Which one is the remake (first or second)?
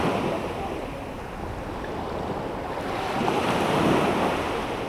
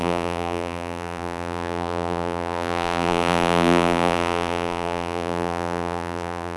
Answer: second